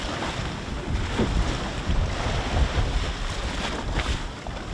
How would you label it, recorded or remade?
recorded